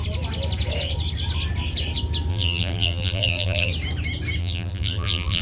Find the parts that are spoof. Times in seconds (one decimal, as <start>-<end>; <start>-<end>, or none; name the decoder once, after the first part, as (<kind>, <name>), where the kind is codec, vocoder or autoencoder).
2.3-3.7 (vocoder, BigVGAN v2); 4.4-5.4